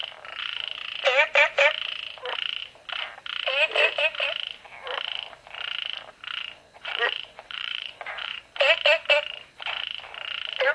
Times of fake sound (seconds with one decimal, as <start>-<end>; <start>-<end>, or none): 6.6-8.4